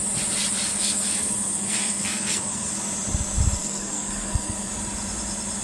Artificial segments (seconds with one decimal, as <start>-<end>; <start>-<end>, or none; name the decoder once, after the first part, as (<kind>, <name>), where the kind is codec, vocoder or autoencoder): 0.7-2.7 (codec, SNAC); 3.6-4.7

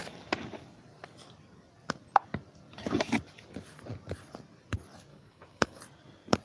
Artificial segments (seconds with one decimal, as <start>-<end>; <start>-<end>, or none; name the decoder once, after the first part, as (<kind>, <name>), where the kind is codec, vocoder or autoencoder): 5.1-5.8 (codec, DAC)

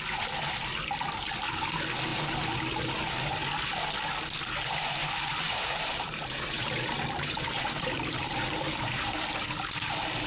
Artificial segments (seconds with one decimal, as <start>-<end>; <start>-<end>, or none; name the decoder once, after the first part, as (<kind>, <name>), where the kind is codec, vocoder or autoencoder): 2.1-2.9 (vocoder, BigVGAN v2); 5.0-9.2

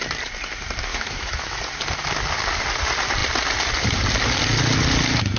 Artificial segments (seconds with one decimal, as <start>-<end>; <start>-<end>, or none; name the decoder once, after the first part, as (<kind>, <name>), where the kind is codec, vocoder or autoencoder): 0.9-1.6 (autoencoder, DAC-VAE)

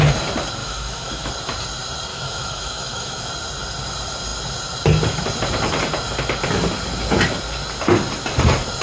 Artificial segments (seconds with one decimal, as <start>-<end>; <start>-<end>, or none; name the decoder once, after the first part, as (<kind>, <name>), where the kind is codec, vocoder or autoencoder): 0.6-1.3 (autoencoder, DAC-VAE); 2.1-3.3